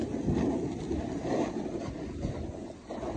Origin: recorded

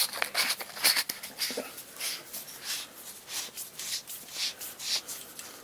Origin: recorded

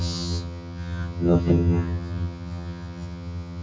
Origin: remade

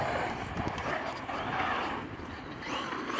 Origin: recorded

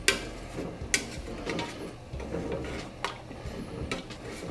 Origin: recorded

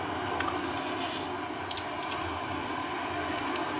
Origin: recorded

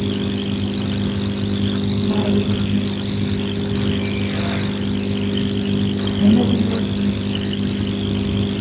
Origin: recorded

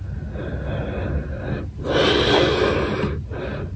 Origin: recorded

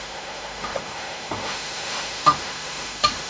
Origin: remade